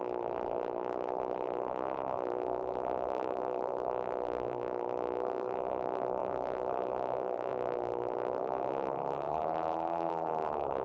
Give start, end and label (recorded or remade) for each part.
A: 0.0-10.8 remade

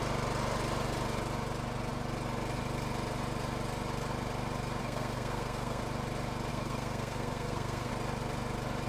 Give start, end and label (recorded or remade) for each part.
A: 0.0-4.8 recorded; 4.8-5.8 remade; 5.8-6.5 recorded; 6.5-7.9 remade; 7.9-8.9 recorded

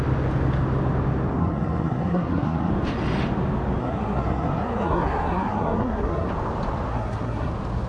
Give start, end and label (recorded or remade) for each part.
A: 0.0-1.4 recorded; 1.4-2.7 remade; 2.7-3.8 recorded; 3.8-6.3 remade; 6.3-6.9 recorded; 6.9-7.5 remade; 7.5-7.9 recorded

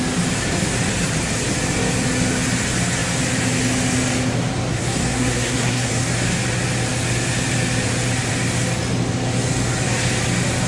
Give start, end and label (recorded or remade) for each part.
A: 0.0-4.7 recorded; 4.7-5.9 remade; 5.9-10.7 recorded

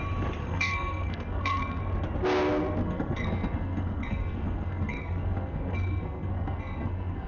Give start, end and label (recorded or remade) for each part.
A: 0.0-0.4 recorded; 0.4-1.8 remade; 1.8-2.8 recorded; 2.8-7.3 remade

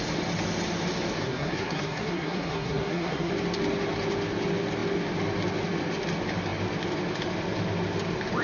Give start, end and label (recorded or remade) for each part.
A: 0.0-1.2 recorded; 1.2-3.3 remade; 3.3-8.4 recorded